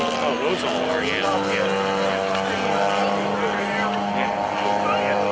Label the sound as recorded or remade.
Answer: recorded